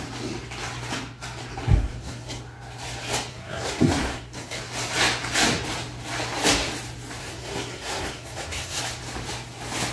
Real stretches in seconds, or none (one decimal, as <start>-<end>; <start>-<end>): 0.0-1.7; 2.4-3.3; 4.6-7.2; 8.8-9.9

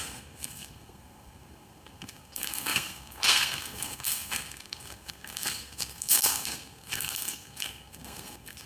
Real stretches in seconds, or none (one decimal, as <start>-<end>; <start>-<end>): none